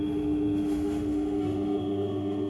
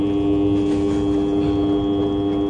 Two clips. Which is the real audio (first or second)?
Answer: second